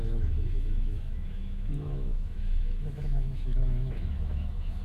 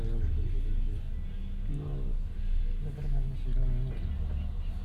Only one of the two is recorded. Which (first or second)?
second